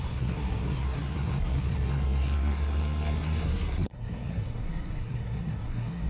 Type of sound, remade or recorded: remade